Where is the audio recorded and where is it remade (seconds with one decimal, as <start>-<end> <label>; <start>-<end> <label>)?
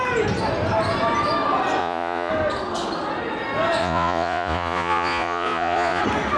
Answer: 0.0-1.8 recorded; 1.8-2.3 remade; 2.3-3.8 recorded; 3.8-6.0 remade; 6.0-6.4 recorded